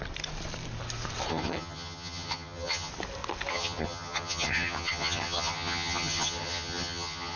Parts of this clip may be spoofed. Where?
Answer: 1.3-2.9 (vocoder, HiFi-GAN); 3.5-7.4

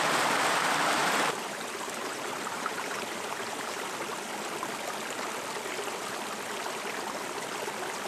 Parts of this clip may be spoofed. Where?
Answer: 1.0-3.9 (vocoder, BigVGAN v2)

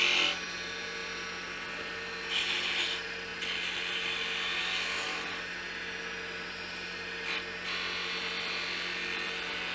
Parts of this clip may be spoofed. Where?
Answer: none

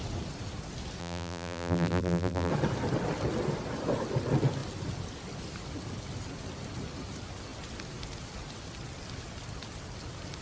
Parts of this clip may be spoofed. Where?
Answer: 1.0-2.5 (vocoder, BigVGAN v2)

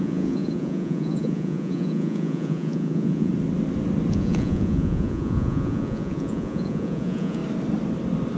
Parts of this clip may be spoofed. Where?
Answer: 0.0-3.3 (vocoder, Vocos); 4.1-7.4

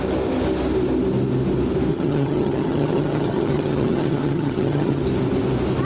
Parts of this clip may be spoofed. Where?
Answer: 1.9-5.0 (vocoder, HiFi-GAN)

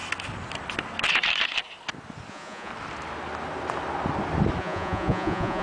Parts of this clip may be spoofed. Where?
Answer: 2.3-2.7 (vocoder, Vocos); 4.6-5.6